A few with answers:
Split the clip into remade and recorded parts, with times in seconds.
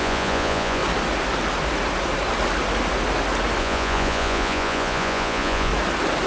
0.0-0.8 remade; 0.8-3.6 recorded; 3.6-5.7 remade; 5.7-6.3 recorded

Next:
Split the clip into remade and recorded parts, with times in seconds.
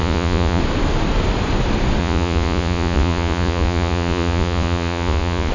0.0-0.6 remade; 0.6-2.0 recorded; 2.0-5.5 remade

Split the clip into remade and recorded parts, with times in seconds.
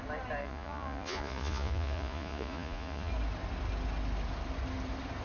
0.0-0.4 recorded; 0.4-3.1 remade; 3.1-5.2 recorded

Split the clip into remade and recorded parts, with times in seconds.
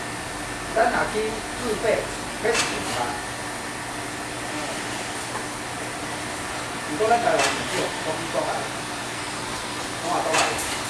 0.0-9.0 recorded; 9.0-9.8 remade; 9.8-10.9 recorded